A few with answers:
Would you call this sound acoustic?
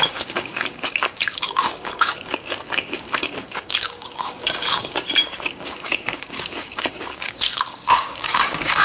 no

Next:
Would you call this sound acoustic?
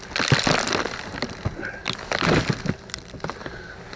yes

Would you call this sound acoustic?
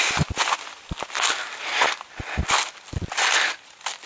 yes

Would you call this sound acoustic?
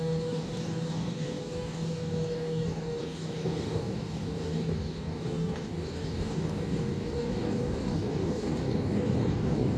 no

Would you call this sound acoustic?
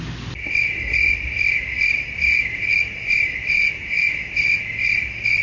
yes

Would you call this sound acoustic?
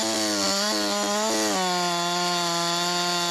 yes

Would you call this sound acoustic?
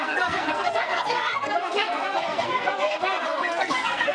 no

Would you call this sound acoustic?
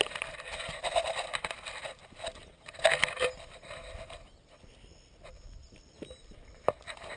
yes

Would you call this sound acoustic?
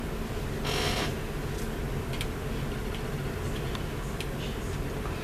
yes